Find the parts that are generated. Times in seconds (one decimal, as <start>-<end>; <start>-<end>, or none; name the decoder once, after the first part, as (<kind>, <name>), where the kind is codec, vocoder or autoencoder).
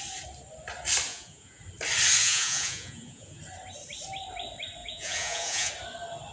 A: 1.1-1.6 (vocoder, Vocos); 2.2-3.4; 4.8-5.7